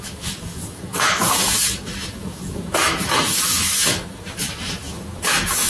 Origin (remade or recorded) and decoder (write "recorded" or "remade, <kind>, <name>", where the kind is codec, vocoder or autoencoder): remade, autoencoder, DAC-VAE